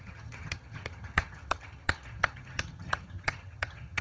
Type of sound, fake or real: fake